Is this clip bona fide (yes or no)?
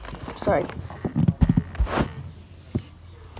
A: yes